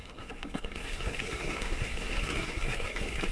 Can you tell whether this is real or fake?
fake